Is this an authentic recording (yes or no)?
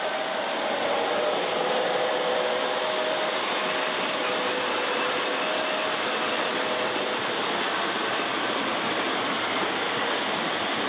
yes